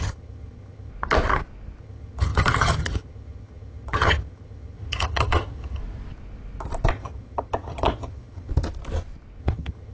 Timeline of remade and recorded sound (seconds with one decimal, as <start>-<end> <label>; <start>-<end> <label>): 0.0-0.9 remade; 0.9-1.8 recorded; 1.8-5.8 remade; 5.8-6.9 recorded; 6.9-8.5 remade; 8.5-9.4 recorded; 9.4-9.9 remade